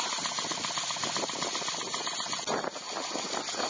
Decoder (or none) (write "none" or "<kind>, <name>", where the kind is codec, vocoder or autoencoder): none